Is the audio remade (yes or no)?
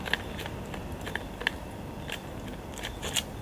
no